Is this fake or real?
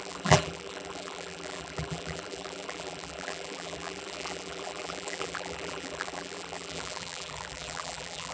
fake